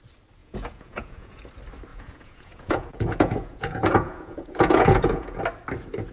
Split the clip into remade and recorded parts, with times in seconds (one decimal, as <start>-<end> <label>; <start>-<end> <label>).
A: 0.0-0.4 recorded; 0.4-1.5 remade; 1.5-1.9 recorded; 1.9-5.4 remade; 5.4-6.1 recorded